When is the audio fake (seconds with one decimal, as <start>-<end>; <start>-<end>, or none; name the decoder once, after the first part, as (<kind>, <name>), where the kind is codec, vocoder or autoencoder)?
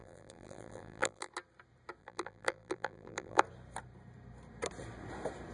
0.0-1.3 (vocoder, BigVGAN v2); 2.0-3.4